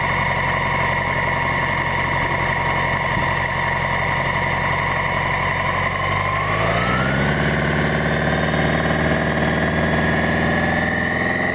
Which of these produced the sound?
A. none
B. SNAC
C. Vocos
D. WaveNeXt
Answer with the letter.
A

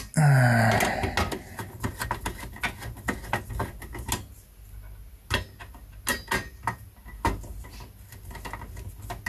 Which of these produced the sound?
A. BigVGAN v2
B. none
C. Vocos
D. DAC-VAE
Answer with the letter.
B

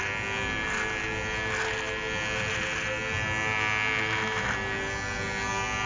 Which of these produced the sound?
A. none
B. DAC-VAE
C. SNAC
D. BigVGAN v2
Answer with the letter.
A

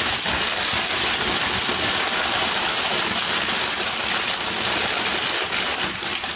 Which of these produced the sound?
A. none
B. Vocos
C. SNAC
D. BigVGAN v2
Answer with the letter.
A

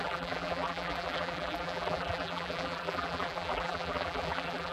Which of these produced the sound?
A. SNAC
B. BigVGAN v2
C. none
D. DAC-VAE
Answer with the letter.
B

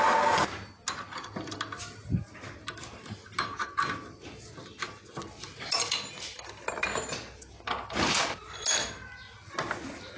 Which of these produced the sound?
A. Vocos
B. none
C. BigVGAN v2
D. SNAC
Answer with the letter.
B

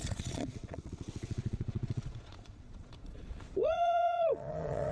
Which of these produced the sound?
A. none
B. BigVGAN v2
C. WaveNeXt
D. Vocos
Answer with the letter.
D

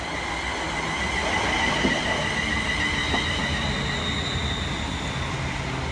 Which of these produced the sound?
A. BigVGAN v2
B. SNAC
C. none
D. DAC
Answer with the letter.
C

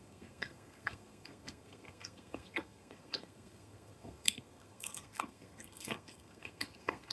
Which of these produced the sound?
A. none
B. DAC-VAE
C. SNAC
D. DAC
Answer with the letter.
C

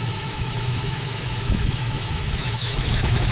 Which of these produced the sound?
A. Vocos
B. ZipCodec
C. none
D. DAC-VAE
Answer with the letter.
D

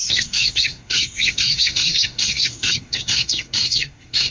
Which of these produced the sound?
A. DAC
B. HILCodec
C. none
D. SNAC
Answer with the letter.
D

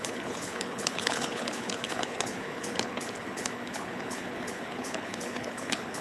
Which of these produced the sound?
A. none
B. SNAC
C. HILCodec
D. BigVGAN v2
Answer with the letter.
C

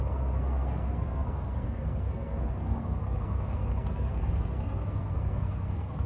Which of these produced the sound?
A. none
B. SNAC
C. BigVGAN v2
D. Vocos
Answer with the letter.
B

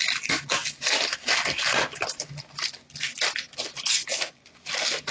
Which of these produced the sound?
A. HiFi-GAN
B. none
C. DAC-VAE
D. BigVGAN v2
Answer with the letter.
B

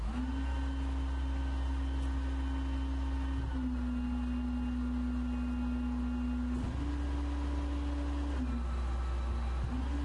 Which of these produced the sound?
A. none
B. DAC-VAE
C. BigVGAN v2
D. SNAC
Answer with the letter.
A